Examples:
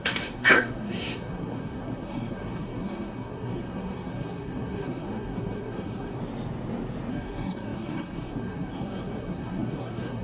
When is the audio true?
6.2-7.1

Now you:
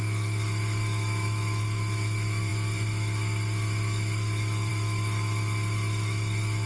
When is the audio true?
none

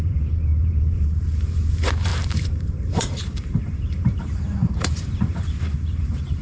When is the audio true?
none

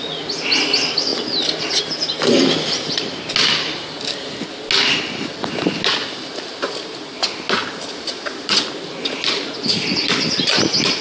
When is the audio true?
0.0-1.1; 1.8-7.6; 8.7-11.0

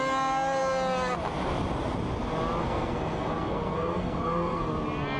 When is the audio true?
0.0-2.6; 4.7-5.2

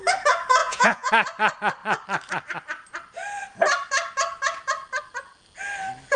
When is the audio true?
0.0-0.6; 1.1-6.2

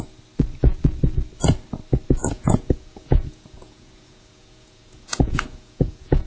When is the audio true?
0.0-2.2